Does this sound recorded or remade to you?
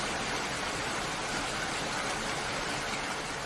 recorded